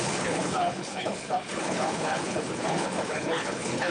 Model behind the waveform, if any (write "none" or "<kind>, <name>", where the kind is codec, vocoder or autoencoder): codec, HILCodec